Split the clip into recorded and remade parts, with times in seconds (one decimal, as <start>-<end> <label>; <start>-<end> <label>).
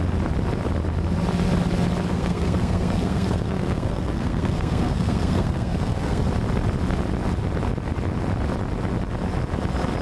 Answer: 0.0-2.1 recorded; 2.1-6.2 remade; 6.2-10.0 recorded